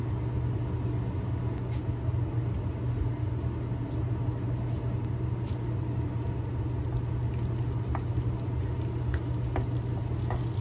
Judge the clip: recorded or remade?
recorded